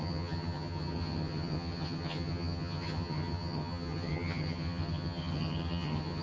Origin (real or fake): fake